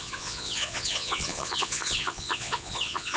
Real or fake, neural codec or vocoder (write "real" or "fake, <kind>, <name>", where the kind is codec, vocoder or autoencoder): fake, vocoder, Vocos